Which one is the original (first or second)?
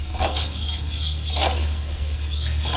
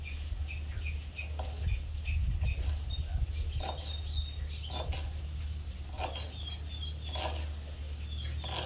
second